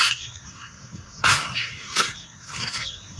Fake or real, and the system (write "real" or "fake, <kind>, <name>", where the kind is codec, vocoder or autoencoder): fake, codec, SNAC